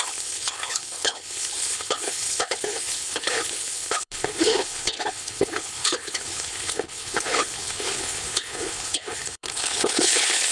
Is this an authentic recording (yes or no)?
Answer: no